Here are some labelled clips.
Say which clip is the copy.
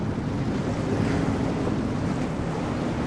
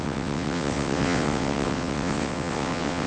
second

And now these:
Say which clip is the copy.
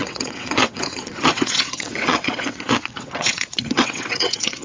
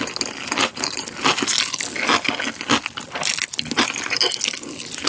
first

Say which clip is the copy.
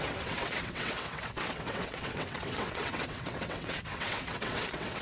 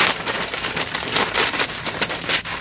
first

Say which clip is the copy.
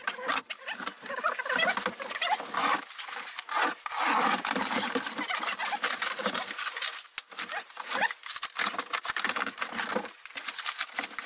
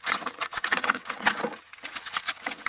second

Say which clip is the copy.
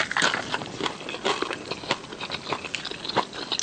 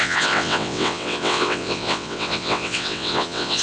second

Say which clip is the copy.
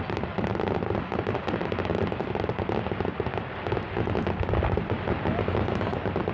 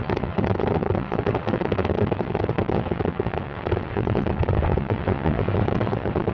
second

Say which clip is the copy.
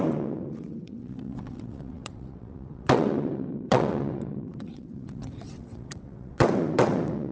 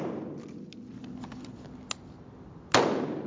first